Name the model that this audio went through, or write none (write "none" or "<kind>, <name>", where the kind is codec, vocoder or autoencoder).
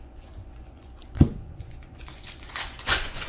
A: vocoder, Vocos